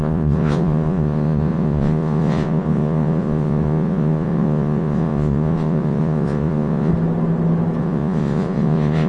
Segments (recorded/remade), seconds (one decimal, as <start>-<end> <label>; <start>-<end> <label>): 0.0-6.9 remade; 6.9-7.8 recorded; 7.8-9.1 remade